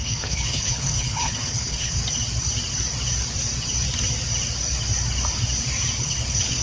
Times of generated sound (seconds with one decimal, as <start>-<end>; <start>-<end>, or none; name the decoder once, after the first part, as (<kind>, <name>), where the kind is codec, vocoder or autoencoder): 0.0-2.0 (codec, HILCodec); 6.0-6.6